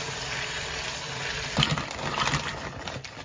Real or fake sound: real